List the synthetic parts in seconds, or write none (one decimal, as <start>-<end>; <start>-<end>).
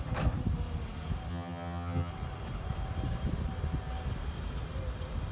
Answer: 1.3-2.1